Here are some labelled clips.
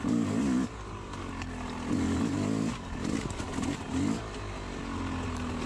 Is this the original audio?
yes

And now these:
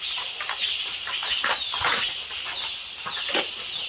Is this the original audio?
yes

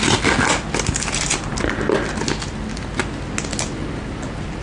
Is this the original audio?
yes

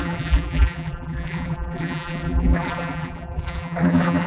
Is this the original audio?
no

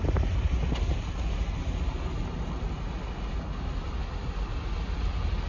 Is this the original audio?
yes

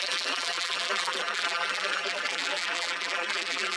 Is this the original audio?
no